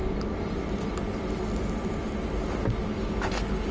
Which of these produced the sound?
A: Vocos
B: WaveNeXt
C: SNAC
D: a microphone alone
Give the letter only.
D